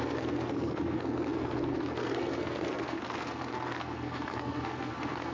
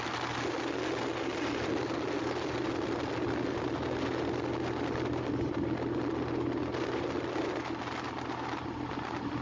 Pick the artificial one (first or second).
first